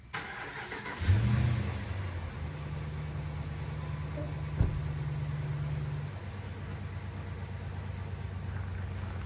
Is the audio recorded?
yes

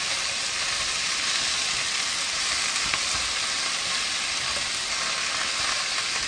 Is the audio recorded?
yes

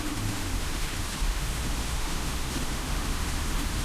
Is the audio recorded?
no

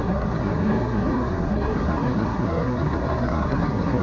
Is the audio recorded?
no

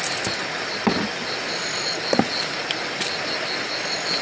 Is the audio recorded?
yes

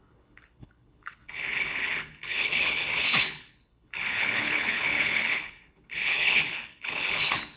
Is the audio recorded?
no